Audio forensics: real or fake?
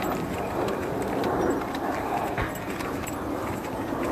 real